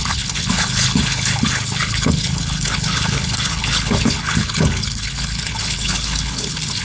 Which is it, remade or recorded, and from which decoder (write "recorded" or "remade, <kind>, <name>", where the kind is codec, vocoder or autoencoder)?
remade, codec, HILCodec